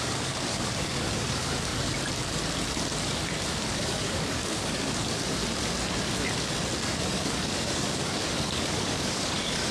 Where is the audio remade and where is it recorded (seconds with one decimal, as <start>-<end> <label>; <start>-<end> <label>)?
0.0-1.7 remade; 1.7-3.7 recorded; 3.7-5.4 remade; 5.4-6.8 recorded; 6.8-9.7 remade